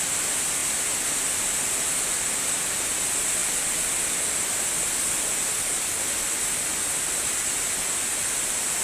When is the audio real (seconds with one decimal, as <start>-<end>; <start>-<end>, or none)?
0.0-6.7; 7.3-8.8